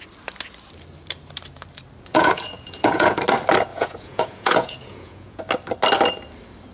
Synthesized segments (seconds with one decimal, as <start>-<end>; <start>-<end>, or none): 2.1-3.2; 3.7-5.4